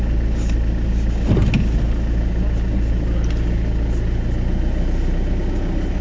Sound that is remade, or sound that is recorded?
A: recorded